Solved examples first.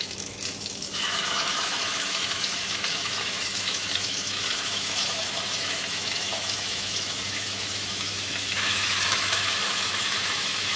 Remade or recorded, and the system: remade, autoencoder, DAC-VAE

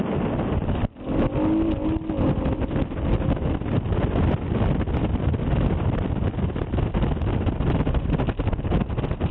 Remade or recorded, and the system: recorded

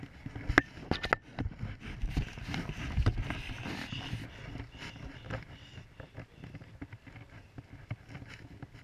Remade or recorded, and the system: recorded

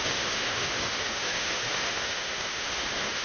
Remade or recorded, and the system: remade, autoencoder, DAC-VAE